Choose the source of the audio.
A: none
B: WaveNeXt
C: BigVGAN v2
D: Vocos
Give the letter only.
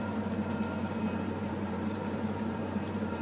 C